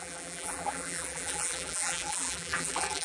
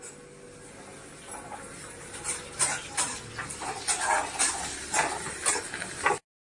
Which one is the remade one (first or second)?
first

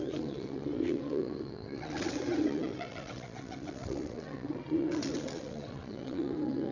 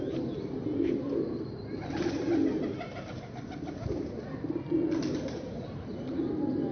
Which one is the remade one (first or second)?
first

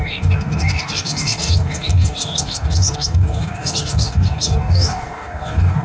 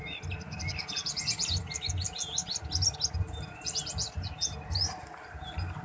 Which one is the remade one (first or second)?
first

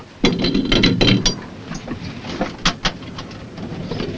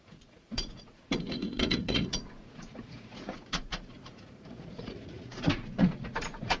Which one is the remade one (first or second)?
second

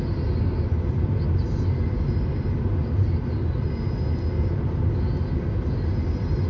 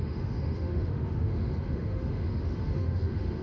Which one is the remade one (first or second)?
second